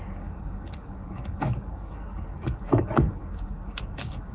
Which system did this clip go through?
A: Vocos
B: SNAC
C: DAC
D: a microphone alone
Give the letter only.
C